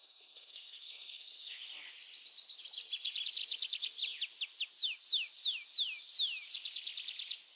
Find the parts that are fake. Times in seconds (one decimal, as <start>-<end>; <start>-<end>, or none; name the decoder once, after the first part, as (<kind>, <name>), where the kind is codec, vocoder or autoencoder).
0.0-1.6 (codec, SNAC)